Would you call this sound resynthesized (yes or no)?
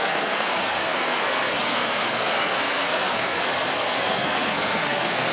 yes